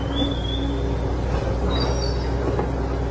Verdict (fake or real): real